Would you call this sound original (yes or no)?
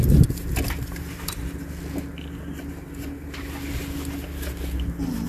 yes